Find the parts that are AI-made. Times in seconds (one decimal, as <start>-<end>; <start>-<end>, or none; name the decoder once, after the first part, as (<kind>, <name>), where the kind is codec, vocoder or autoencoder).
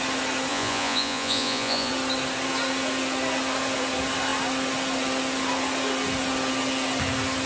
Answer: 0.5-1.9 (vocoder, Vocos)